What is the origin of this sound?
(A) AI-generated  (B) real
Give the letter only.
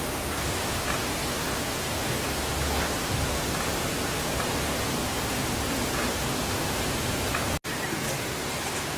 B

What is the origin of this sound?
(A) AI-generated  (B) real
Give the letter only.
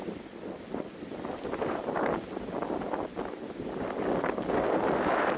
B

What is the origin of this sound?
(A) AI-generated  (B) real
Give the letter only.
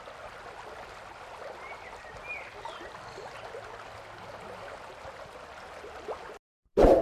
B